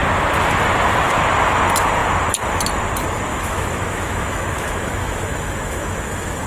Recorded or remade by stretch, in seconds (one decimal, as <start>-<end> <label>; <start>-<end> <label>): 0.0-3.3 recorded; 3.3-6.5 remade